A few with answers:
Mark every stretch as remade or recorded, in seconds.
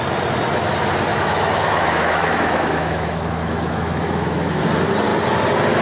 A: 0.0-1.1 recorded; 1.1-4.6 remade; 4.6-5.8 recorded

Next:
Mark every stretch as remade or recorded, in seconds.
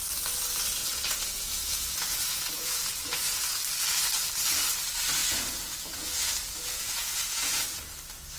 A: 0.0-0.8 recorded; 0.8-3.6 remade; 3.6-5.2 recorded; 5.2-7.8 remade; 7.8-8.4 recorded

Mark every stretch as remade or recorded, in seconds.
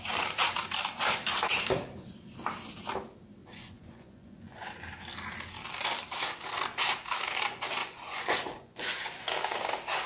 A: 0.0-3.4 recorded; 3.4-4.8 remade; 4.8-7.8 recorded; 7.8-9.3 remade; 9.3-10.1 recorded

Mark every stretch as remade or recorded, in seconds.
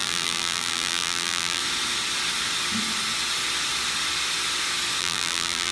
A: 0.0-1.6 remade; 1.6-5.0 recorded; 5.0-5.7 remade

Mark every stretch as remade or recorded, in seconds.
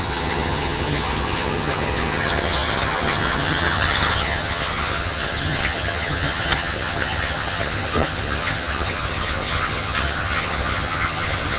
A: 0.0-11.6 remade